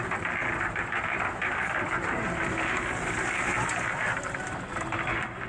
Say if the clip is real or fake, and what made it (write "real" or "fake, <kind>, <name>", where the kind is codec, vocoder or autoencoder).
fake, vocoder, BigVGAN v2